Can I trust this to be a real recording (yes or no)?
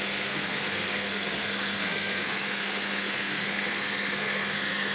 no